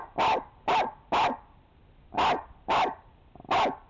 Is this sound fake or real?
real